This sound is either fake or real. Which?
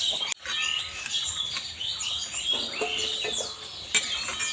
real